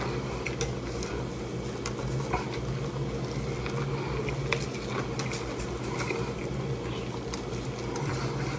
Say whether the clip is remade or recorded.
recorded